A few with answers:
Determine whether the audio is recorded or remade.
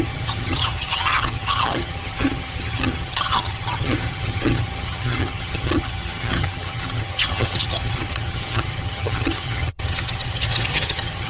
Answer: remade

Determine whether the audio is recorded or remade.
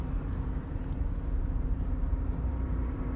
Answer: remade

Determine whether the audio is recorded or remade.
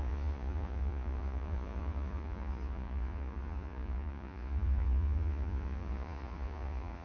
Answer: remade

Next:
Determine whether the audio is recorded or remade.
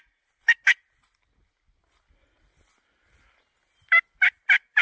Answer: recorded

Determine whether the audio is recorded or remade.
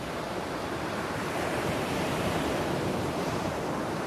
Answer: remade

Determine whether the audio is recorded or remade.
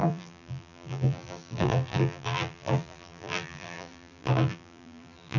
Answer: remade